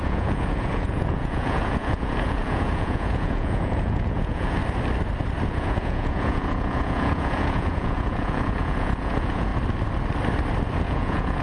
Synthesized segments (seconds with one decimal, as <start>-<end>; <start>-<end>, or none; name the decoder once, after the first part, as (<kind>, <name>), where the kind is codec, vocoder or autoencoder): 0.0-4.6 (vocoder, Vocos); 5.5-9.5; 10.8-11.4